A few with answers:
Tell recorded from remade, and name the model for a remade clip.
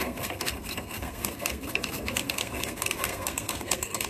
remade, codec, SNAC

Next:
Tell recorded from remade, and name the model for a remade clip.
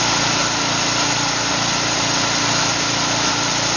recorded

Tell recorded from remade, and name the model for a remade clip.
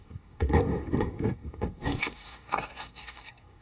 remade, codec, SNAC